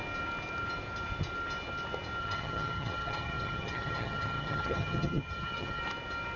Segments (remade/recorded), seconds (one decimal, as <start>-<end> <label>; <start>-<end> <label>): 0.0-2.2 recorded; 2.2-5.8 remade; 5.8-6.4 recorded